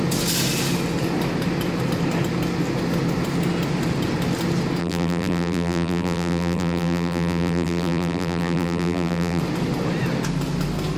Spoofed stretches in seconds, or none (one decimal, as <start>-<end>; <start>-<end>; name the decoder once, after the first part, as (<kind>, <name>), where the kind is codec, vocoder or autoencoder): 4.8-9.4 (vocoder, BigVGAN v2)